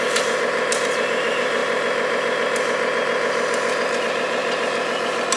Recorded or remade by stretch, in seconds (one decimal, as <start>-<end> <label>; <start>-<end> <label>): 0.0-1.6 remade; 1.6-4.0 recorded; 4.0-4.4 remade; 4.4-5.4 recorded